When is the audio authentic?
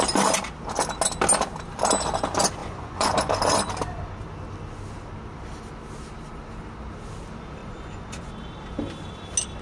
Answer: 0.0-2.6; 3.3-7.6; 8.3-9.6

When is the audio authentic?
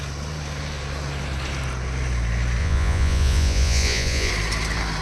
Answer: 0.0-2.6; 4.3-5.0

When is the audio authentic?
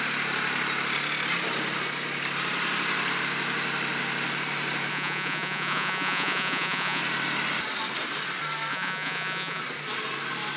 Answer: 0.0-4.9; 7.0-8.7; 9.6-10.6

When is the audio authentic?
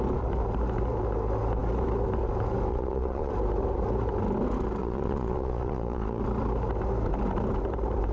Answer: 0.0-2.7; 3.3-4.8; 6.2-8.1